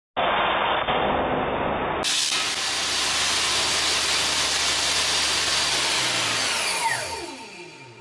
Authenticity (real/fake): real